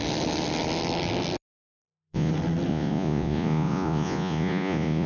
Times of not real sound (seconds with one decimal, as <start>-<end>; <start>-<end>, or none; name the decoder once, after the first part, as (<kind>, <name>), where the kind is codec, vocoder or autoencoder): 1.6-2.3 (vocoder, Vocos); 2.7-5.1